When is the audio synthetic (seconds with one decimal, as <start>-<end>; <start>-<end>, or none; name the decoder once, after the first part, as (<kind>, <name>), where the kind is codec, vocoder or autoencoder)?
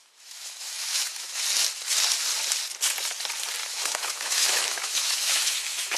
0.0-1.4 (autoencoder, DAC-VAE); 3.6-6.0